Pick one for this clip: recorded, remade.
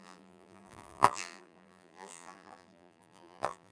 remade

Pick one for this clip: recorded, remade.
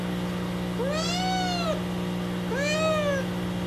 recorded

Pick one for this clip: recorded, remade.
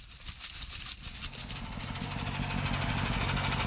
recorded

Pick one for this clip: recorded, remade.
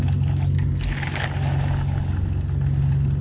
recorded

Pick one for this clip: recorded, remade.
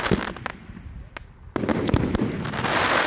recorded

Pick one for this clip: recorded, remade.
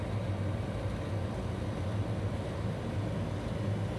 recorded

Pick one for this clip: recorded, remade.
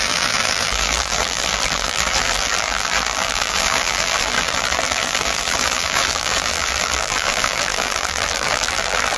remade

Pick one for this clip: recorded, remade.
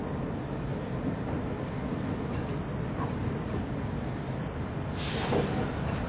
remade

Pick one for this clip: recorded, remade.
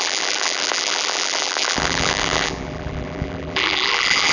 remade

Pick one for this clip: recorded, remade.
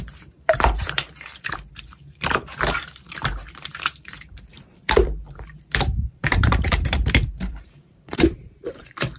remade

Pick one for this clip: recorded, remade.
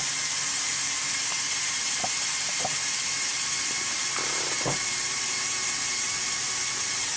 remade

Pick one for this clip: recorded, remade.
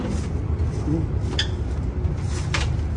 recorded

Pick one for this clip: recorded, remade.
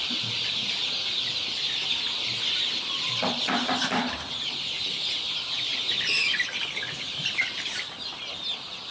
remade